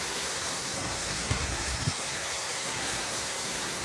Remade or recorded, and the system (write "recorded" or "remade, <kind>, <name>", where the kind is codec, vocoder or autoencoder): remade, codec, SNAC